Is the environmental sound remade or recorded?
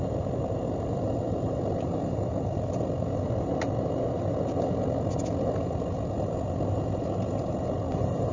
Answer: recorded